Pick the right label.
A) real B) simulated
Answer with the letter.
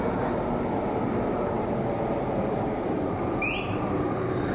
A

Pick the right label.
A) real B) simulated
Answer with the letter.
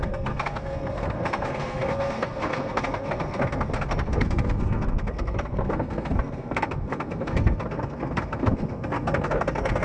B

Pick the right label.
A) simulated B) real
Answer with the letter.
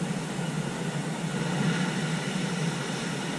B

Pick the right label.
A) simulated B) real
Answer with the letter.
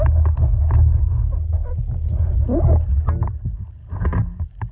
B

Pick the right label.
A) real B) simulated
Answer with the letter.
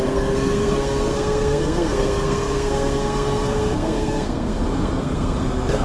B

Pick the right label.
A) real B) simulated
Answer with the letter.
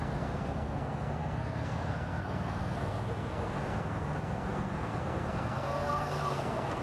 B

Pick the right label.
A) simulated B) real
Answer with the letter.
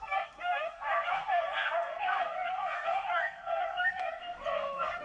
A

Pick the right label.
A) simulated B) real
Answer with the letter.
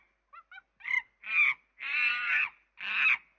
B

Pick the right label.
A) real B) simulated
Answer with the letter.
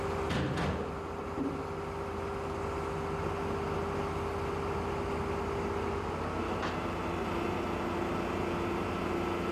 A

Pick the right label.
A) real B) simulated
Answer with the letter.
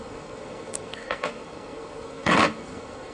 B